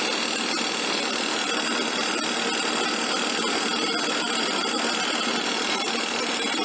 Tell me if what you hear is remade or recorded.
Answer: recorded